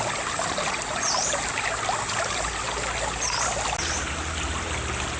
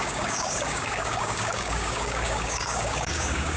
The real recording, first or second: first